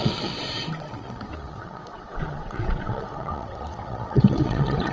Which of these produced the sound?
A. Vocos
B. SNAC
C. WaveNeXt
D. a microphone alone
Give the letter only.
C